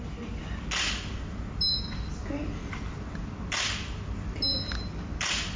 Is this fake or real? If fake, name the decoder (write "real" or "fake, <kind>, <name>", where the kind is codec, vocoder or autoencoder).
real